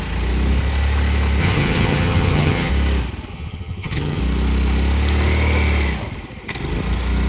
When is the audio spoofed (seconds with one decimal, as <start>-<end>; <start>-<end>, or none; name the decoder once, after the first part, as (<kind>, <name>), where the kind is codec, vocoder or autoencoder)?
1.4-2.7 (vocoder, HiFi-GAN); 3.3-4.2